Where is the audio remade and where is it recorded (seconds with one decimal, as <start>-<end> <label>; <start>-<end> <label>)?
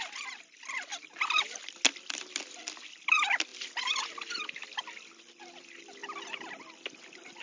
0.0-3.5 recorded; 3.5-4.6 remade; 4.6-7.4 recorded